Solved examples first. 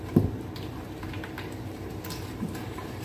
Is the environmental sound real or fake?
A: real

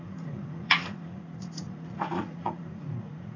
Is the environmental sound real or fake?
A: fake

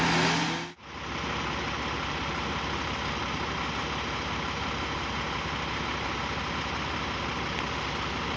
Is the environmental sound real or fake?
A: real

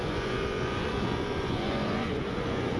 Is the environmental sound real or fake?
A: fake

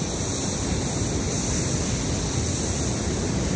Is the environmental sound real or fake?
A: real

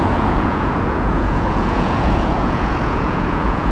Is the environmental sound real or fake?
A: fake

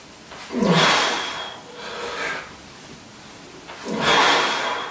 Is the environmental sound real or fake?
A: real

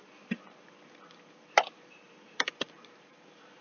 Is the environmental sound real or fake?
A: fake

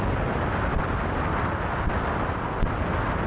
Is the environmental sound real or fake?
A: real